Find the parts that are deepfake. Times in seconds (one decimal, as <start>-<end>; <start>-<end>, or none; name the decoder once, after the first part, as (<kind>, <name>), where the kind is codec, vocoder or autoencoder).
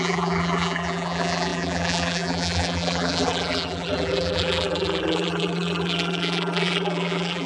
0.0-7.5 (vocoder, BigVGAN v2)